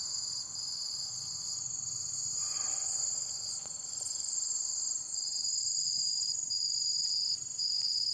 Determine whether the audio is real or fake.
fake